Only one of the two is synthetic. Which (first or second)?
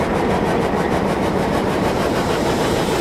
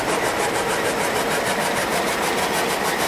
first